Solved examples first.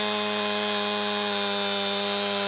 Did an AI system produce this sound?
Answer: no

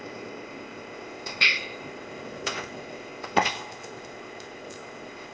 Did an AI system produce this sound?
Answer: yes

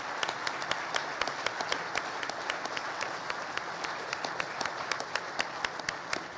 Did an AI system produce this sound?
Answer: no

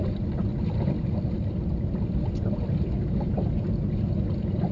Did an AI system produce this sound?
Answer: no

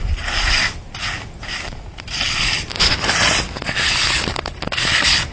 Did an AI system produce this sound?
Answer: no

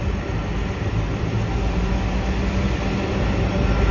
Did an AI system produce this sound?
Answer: no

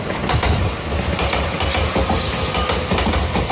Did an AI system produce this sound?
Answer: no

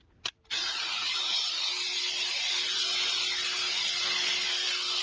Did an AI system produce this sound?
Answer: no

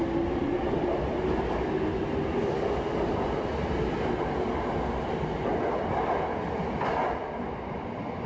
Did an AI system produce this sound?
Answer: no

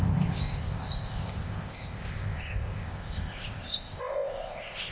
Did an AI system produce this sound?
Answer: yes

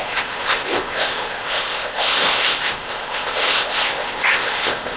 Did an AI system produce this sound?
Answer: yes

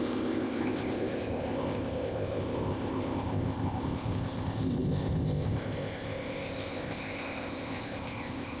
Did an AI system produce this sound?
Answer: yes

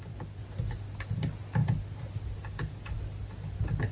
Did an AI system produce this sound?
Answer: no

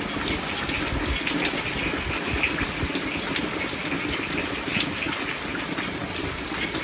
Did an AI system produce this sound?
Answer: no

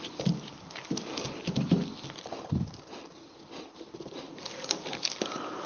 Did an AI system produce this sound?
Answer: no